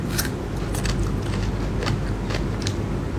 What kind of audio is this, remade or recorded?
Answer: recorded